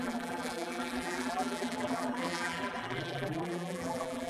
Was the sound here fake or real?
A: fake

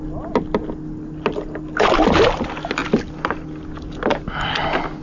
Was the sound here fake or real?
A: real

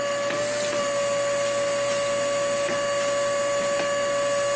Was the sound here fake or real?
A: real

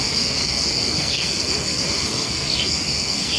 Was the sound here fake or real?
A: fake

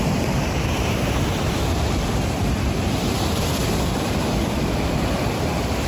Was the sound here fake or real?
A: fake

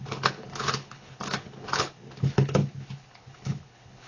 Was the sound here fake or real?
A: fake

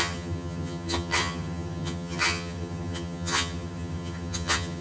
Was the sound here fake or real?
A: fake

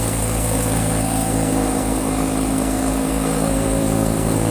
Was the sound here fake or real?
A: fake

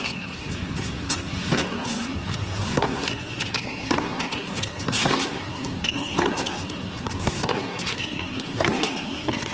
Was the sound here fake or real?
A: fake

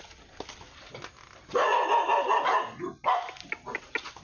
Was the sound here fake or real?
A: real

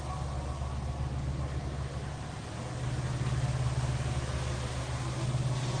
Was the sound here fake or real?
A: real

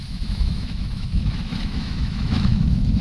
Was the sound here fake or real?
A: fake